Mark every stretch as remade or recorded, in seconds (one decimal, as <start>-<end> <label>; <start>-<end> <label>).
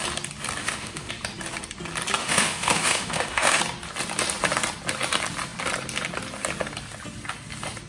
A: 0.0-0.6 recorded; 0.6-1.1 remade; 1.1-2.2 recorded; 2.2-3.6 remade; 3.6-7.9 recorded